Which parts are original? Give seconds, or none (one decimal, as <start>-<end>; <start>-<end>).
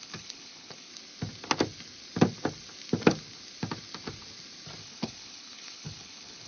0.9-4.8